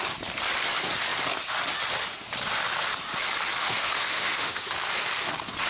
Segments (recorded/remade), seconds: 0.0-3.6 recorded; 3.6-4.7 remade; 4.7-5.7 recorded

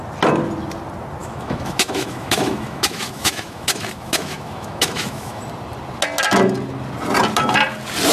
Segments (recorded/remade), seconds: 0.0-1.2 recorded; 1.2-5.4 remade; 5.4-8.1 recorded